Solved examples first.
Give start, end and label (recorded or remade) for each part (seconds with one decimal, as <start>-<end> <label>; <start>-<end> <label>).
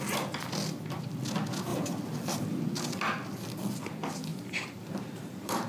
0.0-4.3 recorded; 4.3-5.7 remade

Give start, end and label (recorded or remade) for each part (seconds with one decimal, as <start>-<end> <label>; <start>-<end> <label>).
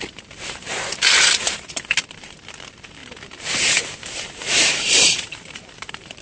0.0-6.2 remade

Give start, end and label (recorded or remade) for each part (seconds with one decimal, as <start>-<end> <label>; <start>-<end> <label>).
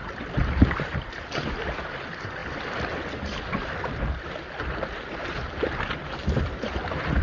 0.0-1.1 remade; 1.1-6.0 recorded; 6.0-7.2 remade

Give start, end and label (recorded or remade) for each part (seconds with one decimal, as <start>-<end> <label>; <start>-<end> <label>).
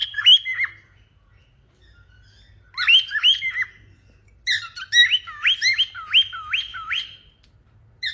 0.0-6.7 recorded; 6.7-7.5 remade; 7.5-8.1 recorded